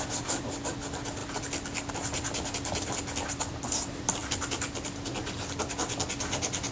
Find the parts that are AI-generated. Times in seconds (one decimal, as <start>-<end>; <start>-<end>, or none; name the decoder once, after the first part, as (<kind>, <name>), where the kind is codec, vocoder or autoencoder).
none